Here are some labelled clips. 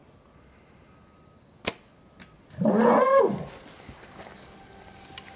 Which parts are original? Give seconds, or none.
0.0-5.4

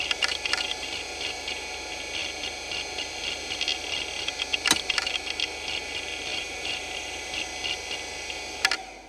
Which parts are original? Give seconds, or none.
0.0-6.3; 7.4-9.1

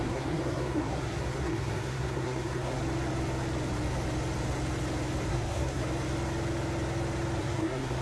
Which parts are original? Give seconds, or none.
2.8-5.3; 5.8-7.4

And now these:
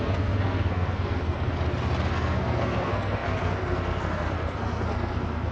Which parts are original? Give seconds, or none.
1.5-2.1